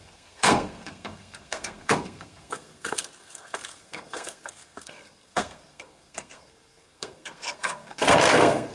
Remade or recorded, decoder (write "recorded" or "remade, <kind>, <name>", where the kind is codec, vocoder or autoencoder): remade, codec, SNAC